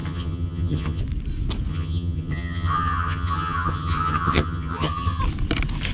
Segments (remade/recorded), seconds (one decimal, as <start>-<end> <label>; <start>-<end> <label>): 0.0-1.0 remade; 1.0-1.7 recorded; 1.7-5.2 remade; 5.2-5.9 recorded